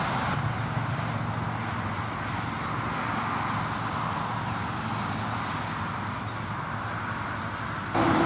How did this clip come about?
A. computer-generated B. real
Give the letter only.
B